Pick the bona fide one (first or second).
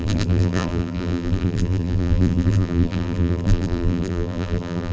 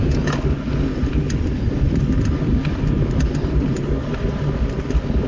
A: second